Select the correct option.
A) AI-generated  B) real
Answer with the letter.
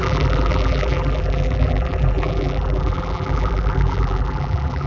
A